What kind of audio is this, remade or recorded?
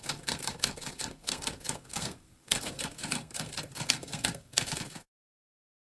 remade